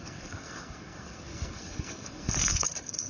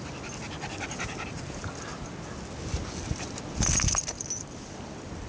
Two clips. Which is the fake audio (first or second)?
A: first